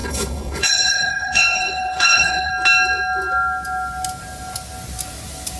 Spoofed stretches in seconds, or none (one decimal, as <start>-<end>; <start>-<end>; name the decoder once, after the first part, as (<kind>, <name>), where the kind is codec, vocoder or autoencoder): 0.0-2.5 (codec, HILCodec)